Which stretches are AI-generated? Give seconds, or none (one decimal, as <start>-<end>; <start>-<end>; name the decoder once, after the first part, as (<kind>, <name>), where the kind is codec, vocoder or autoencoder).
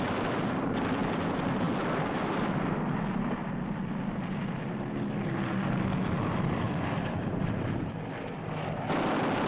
none